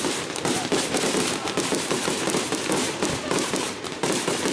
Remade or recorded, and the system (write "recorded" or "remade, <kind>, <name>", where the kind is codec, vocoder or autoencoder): remade, vocoder, BigVGAN v2